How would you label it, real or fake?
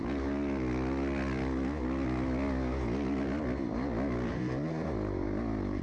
real